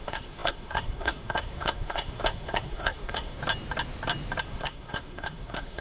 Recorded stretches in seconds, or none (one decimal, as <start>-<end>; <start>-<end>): 3.4-4.4